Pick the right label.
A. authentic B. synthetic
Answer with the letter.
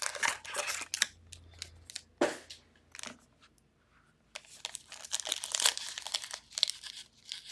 A